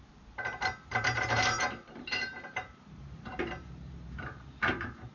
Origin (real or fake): fake